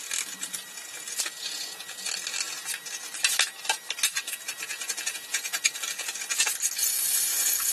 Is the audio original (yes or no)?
yes